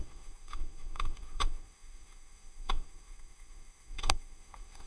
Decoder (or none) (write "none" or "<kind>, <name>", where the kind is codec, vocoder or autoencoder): autoencoder, DAC-VAE